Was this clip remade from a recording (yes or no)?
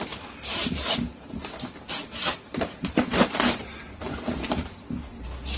yes